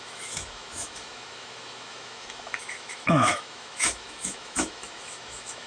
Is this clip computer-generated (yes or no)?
yes